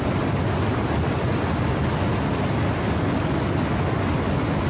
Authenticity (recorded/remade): recorded